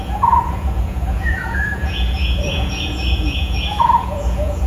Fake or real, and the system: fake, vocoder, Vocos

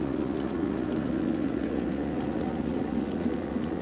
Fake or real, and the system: fake, vocoder, Vocos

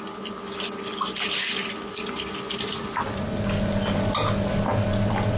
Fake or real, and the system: real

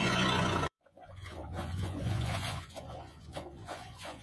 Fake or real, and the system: fake, vocoder, Vocos